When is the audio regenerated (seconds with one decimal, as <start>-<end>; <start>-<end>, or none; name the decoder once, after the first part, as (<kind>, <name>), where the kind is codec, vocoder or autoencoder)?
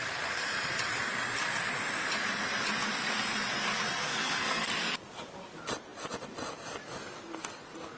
4.0-4.7 (codec, SNAC)